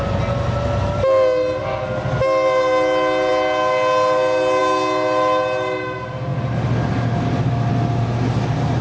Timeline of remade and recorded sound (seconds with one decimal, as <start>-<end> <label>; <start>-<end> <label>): 0.0-8.8 recorded